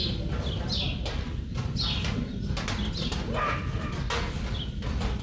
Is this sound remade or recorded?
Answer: recorded